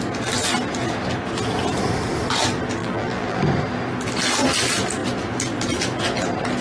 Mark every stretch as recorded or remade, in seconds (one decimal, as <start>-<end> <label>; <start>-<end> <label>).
0.0-2.8 recorded; 2.8-3.4 remade; 3.4-6.6 recorded

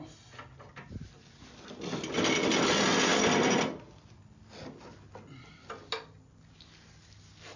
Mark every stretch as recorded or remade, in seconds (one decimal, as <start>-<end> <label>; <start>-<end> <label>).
0.0-7.6 recorded

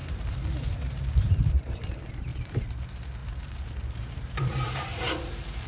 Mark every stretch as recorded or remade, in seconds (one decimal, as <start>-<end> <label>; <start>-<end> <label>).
0.0-1.6 remade; 1.6-2.3 recorded; 2.3-2.8 remade; 2.8-3.2 recorded; 3.2-5.3 remade; 5.3-5.7 recorded